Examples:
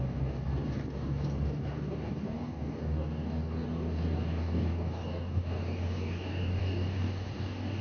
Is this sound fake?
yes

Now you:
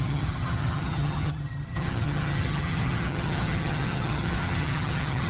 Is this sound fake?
yes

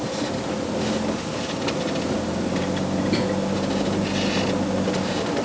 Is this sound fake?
no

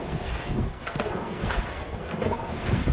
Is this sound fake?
yes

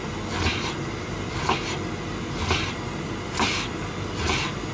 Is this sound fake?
no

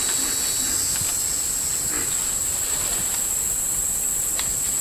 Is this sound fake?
no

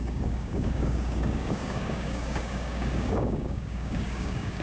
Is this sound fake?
yes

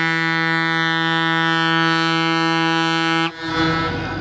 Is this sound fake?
no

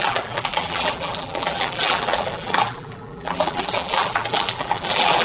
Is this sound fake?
yes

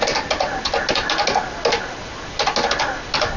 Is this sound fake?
no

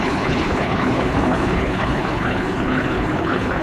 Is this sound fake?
yes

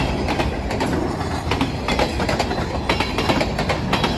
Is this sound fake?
no